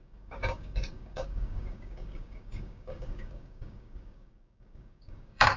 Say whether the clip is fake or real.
fake